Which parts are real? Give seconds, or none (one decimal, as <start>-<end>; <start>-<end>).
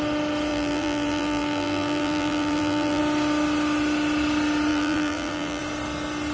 0.0-0.5; 3.0-4.7; 5.6-6.3